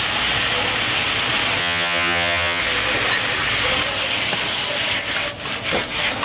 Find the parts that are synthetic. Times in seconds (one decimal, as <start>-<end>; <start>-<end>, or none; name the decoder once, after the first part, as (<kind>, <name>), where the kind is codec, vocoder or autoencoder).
1.6-2.6 (vocoder, HiFi-GAN)